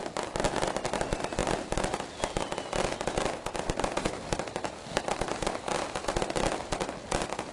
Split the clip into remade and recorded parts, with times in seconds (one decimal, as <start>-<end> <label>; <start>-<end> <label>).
0.0-7.5 recorded